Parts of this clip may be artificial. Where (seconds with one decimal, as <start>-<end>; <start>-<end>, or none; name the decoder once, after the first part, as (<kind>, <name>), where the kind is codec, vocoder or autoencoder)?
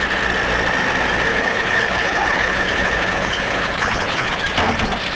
1.3-4.4 (codec, HILCodec)